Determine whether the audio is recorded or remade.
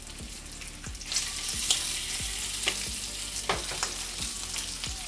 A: recorded